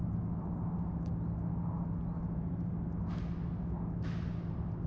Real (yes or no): yes